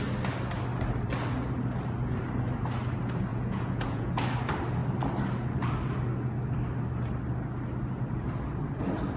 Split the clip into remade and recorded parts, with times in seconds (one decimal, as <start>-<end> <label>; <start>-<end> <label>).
0.0-3.3 recorded; 3.3-4.1 remade; 4.1-9.2 recorded